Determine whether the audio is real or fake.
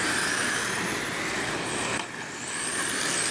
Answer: real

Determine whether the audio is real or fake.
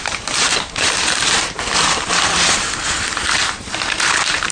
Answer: fake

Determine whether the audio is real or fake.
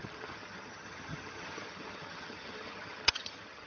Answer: fake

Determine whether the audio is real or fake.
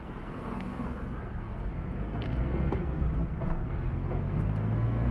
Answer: fake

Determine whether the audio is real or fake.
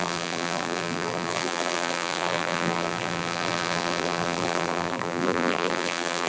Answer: fake